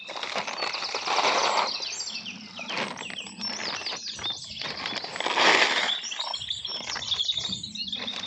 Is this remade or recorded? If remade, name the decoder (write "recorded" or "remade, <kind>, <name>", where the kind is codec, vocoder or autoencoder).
recorded